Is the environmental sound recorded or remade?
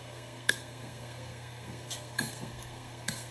remade